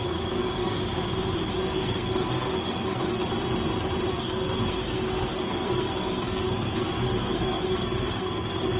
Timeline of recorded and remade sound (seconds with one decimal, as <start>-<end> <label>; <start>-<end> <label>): 0.0-0.8 remade; 0.8-1.5 recorded; 1.5-3.2 remade; 3.2-4.1 recorded; 4.1-8.8 remade